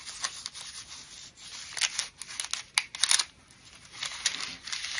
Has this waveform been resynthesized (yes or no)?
no